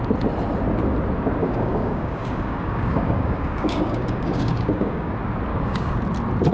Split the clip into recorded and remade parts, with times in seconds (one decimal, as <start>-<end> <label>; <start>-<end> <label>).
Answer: 0.0-1.4 recorded; 1.4-5.1 remade; 5.1-5.5 recorded; 5.5-6.0 remade; 6.0-6.5 recorded